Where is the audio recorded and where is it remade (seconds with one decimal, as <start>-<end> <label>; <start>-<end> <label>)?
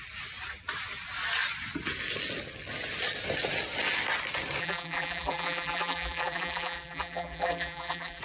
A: 0.0-4.6 recorded; 4.6-8.2 remade